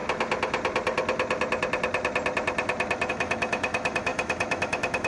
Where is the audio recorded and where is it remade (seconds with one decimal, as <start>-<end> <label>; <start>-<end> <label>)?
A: 0.0-3.1 recorded; 3.1-5.1 remade